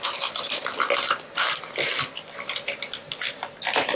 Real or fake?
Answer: real